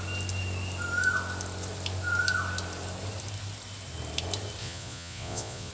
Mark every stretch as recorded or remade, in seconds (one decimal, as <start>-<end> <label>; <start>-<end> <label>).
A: 0.0-4.6 recorded; 4.6-5.7 remade